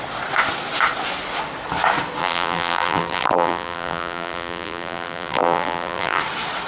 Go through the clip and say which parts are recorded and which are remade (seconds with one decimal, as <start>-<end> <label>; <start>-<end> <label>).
0.0-2.2 recorded; 2.2-6.2 remade; 6.2-6.7 recorded